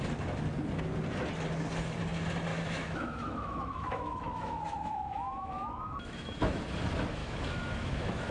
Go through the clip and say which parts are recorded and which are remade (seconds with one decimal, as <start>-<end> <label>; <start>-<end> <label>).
0.0-2.5 recorded; 2.5-6.6 remade; 6.6-7.2 recorded; 7.2-8.3 remade